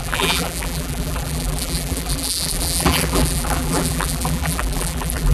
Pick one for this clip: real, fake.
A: fake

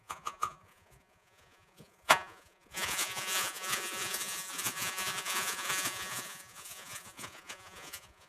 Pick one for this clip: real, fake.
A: fake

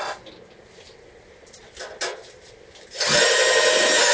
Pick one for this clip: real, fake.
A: real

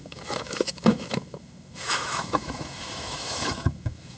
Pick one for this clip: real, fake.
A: fake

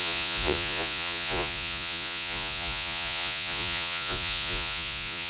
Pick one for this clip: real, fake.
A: fake